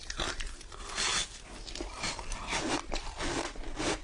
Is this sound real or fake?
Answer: real